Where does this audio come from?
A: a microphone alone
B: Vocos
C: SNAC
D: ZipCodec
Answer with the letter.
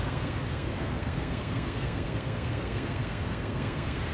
C